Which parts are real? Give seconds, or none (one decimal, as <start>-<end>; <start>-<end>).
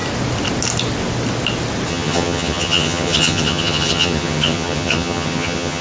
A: 0.0-1.9